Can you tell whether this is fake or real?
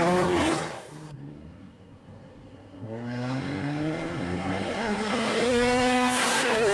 fake